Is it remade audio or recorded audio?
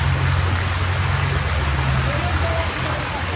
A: recorded